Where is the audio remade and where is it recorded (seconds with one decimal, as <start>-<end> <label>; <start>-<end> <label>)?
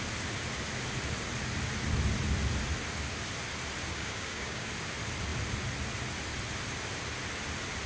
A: 0.0-3.9 recorded; 3.9-4.7 remade; 4.7-7.9 recorded